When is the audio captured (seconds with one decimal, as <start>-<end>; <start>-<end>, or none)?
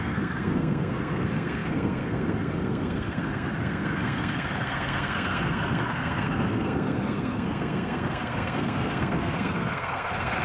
none